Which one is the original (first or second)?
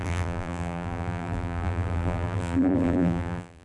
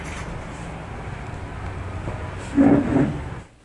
second